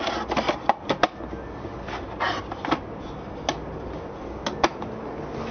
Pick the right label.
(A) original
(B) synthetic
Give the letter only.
A